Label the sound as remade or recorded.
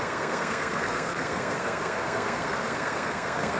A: remade